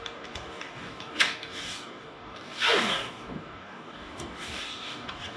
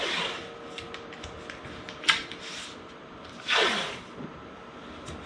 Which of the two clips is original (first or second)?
second